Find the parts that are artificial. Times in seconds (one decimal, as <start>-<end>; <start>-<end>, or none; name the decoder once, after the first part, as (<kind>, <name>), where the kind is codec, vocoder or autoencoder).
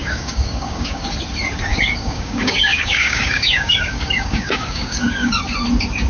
0.0-1.1 (codec, DAC); 1.7-5.4